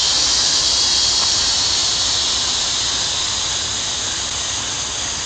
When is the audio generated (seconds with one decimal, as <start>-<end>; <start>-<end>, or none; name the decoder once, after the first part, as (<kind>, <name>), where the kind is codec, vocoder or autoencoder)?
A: none